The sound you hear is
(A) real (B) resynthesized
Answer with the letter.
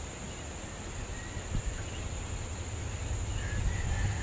A